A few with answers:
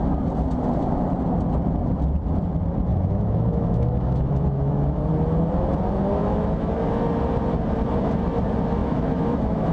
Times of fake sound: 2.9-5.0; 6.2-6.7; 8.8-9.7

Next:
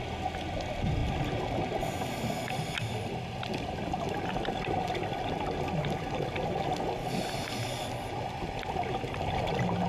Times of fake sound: none

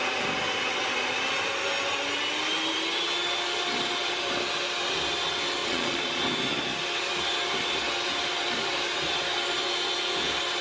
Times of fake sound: 5.6-6.2